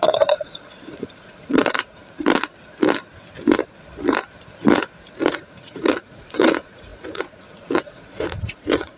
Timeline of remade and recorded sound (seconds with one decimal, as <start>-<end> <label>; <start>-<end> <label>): 0.0-2.0 remade; 2.0-5.3 recorded; 5.3-9.0 remade